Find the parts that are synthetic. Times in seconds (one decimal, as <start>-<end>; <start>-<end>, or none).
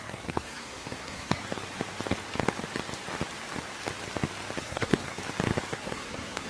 0.0-1.4; 4.6-5.2; 5.7-6.5